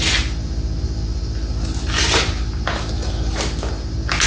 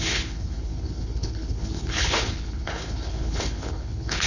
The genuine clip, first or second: first